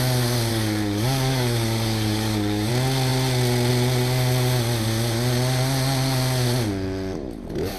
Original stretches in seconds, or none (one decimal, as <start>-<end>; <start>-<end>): 0.0-0.5; 2.7-7.8